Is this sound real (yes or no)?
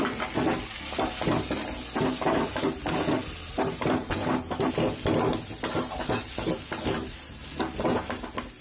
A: yes